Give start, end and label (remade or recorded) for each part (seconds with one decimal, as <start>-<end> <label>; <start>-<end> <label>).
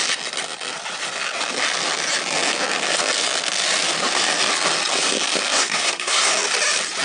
0.0-5.5 recorded; 5.5-6.3 remade; 6.3-7.0 recorded